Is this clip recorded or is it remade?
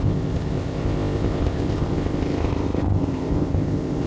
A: remade